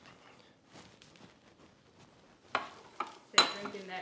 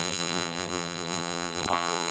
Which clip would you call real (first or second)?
first